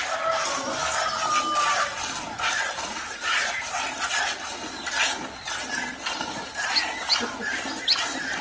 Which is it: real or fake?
real